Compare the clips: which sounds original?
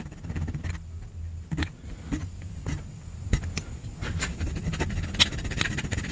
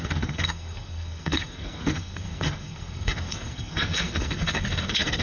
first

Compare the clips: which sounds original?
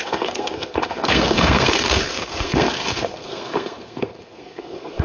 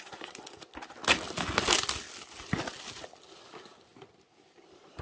second